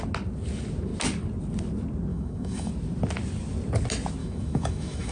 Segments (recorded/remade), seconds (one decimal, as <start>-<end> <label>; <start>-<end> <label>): 0.0-2.1 recorded; 2.1-2.7 remade; 2.7-4.2 recorded; 4.2-5.1 remade